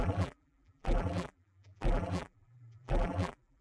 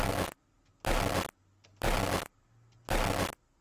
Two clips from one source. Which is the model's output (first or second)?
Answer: first